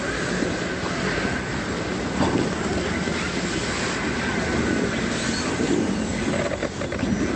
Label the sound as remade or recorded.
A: recorded